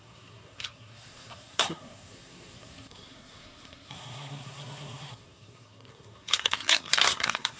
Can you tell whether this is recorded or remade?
remade